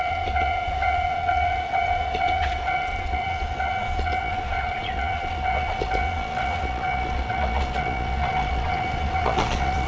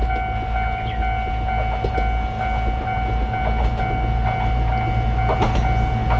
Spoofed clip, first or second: first